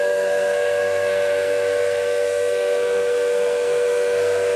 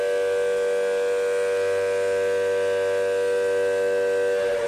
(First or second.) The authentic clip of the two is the second